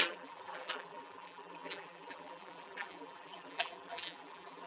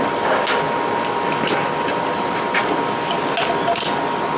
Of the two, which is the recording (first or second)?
second